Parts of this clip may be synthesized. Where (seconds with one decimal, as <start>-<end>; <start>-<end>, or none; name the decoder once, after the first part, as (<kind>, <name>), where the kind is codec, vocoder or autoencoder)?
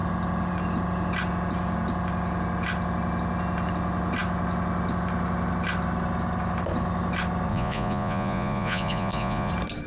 7.5-9.5 (vocoder, Vocos)